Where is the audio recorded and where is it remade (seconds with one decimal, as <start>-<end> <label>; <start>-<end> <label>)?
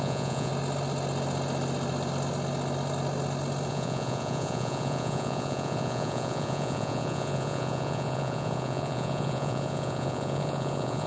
0.0-0.5 remade; 0.5-3.7 recorded; 3.7-11.1 remade